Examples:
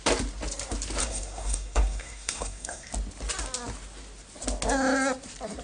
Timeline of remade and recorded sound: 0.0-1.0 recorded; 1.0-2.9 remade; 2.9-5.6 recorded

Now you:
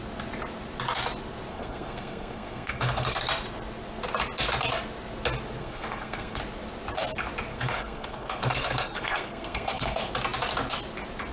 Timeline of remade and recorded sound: 0.0-1.5 recorded; 1.5-3.2 remade; 3.2-5.6 recorded; 5.6-6.4 remade; 6.4-7.5 recorded; 7.5-10.1 remade; 10.1-11.3 recorded

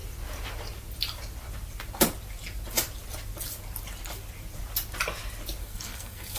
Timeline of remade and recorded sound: 0.0-5.6 recorded; 5.6-6.4 remade

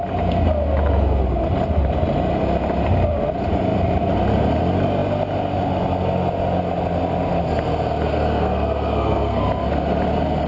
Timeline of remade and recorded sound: 0.0-8.1 recorded; 8.1-9.4 remade; 9.4-10.5 recorded

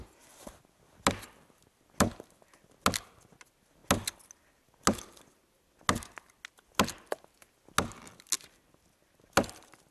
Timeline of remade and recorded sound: 0.0-9.9 recorded

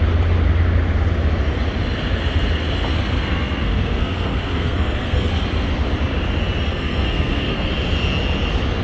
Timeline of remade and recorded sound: 0.0-2.9 recorded; 2.9-5.3 remade; 5.3-6.7 recorded; 6.7-7.7 remade; 7.7-8.8 recorded

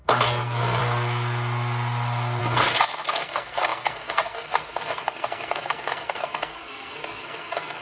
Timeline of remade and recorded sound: 0.0-0.8 remade; 0.8-2.4 recorded; 2.4-7.8 remade